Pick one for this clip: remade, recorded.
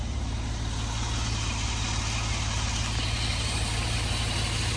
recorded